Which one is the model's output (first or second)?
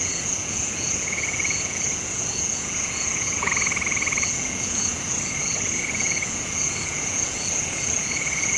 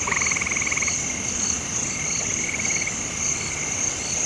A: first